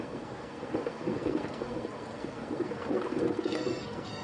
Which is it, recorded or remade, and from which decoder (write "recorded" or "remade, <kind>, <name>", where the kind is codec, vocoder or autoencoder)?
remade, codec, SNAC